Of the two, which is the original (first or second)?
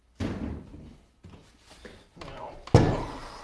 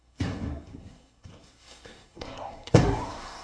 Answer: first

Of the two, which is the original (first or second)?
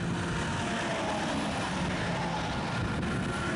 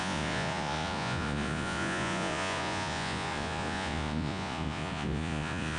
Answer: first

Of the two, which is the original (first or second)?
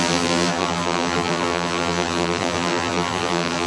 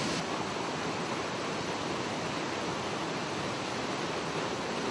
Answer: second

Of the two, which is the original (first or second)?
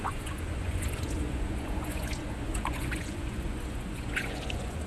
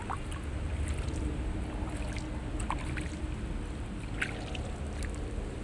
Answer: second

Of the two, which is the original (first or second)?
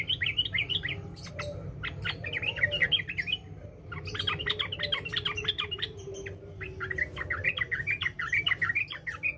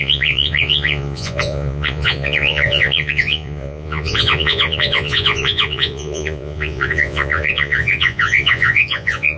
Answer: first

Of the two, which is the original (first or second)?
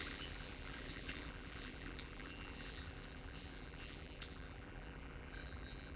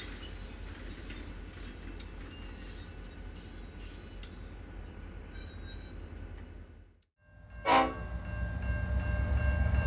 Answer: second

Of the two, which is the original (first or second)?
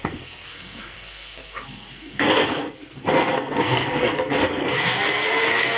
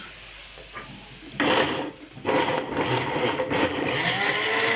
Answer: second